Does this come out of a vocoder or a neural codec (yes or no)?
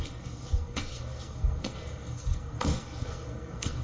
yes